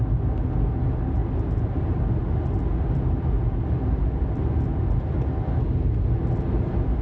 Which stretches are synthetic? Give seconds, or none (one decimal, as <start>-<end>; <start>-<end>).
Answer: none